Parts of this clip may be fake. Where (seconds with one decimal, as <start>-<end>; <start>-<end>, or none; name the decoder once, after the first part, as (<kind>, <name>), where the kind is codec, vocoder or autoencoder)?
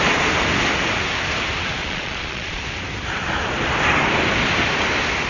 1.8-2.6 (vocoder, Vocos)